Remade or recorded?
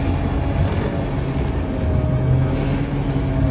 recorded